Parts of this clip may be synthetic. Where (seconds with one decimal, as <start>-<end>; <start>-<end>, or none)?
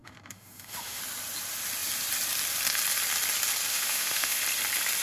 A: 0.0-1.0; 3.7-4.4